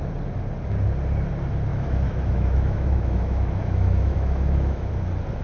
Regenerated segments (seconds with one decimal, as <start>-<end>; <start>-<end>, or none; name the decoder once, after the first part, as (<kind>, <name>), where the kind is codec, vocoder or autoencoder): 1.7-4.9 (autoencoder, DAC-VAE)